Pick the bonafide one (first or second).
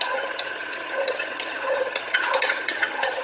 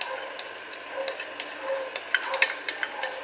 second